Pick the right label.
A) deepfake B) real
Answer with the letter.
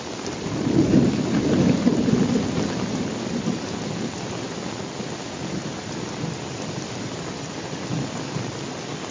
B